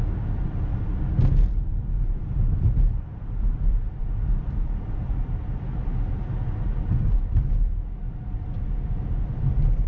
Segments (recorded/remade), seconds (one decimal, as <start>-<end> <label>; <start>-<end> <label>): 0.0-1.7 recorded; 1.7-2.2 remade; 2.2-3.7 recorded; 3.7-6.5 remade; 6.5-9.9 recorded